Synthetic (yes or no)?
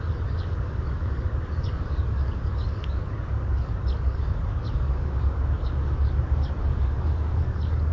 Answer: yes